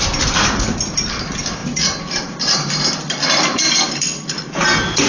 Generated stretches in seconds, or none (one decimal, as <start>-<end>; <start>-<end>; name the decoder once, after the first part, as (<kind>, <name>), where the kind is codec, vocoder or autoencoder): none

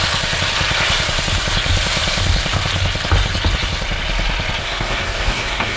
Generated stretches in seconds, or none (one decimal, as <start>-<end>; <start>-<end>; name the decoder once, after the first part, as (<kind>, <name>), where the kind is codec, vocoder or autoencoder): 4.6-5.8 (codec, SNAC)

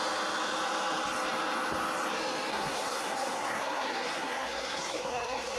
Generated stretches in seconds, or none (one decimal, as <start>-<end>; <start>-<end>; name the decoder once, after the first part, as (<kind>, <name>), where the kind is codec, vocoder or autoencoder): 2.5-5.6 (codec, SNAC)

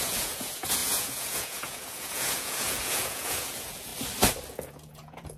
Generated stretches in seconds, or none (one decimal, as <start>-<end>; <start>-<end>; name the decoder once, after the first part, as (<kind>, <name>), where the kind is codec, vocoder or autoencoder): 0.0-3.9 (vocoder, Vocos); 4.5-5.4

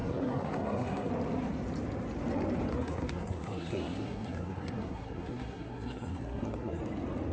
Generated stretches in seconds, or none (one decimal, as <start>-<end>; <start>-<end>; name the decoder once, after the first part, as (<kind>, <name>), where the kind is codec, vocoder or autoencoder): 0.0-1.1 (codec, SNAC); 2.7-6.8

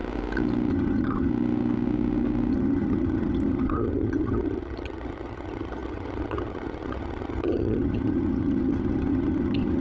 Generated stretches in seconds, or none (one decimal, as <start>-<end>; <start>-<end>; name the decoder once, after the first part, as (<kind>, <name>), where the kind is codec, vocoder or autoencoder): 0.7-1.3 (vocoder, HiFi-GAN); 2.5-9.8